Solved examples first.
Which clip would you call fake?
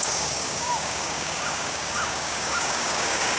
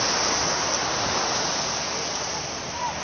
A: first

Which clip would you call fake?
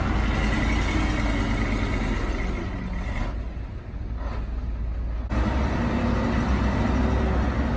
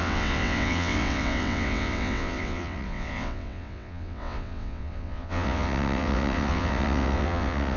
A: second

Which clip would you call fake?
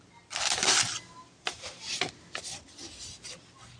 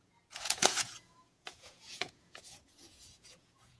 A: second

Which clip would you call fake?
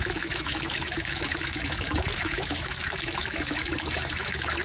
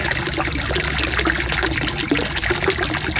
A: first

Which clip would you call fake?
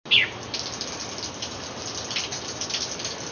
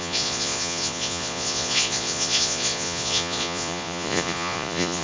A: second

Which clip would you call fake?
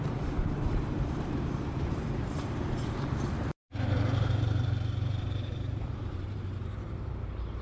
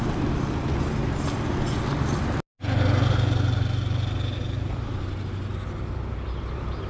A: first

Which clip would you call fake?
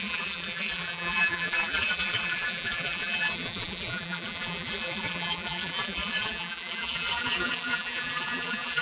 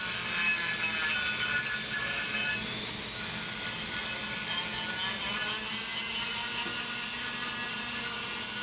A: first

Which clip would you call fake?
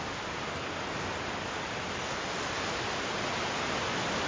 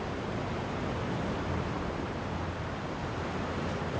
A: second